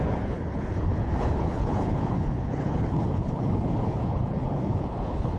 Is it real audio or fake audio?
fake